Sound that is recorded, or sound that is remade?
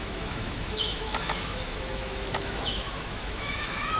remade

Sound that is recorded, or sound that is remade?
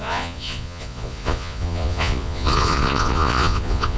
remade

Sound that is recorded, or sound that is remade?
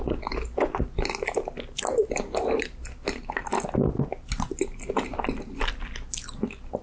recorded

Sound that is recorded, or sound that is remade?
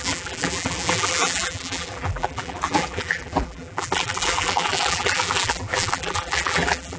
remade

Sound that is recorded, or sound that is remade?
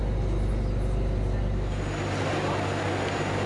recorded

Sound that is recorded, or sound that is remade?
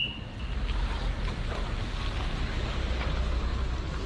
recorded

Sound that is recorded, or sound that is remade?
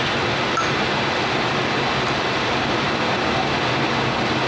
recorded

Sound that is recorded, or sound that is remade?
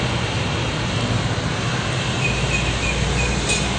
recorded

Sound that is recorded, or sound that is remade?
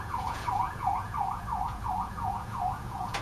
remade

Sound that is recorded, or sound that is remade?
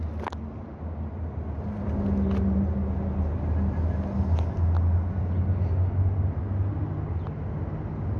recorded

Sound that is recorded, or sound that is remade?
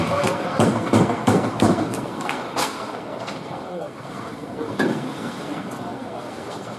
remade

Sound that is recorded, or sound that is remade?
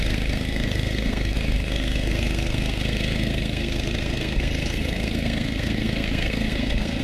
remade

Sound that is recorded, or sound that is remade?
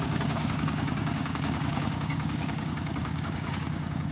remade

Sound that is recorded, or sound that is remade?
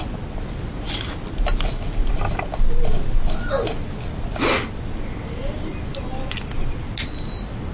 recorded